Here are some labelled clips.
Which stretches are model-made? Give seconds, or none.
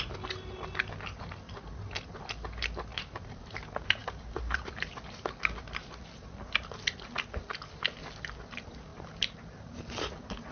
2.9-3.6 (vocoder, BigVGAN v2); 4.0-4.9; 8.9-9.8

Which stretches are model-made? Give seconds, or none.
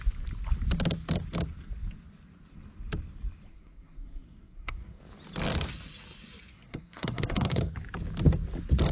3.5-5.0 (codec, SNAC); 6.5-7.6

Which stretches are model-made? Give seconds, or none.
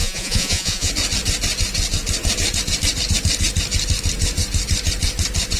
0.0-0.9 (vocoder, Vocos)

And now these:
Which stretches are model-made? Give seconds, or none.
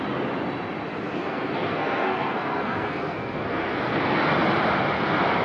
1.1-4.3 (codec, SNAC)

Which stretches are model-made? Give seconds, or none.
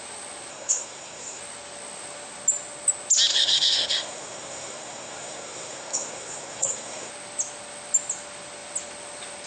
0.5-1.4 (codec, SNAC); 3.3-7.1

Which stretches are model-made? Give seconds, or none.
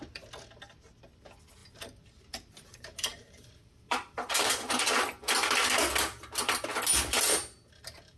1.6-4.8 (vocoder, BigVGAN v2)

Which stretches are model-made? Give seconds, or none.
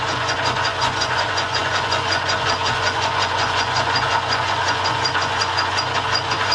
0.0-6.5 (vocoder, Vocos)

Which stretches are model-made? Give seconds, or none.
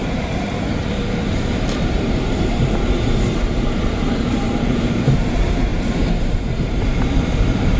0.0-7.8 (vocoder, BigVGAN v2)